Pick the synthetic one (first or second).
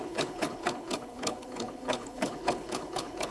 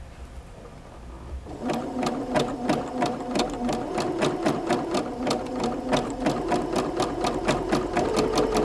first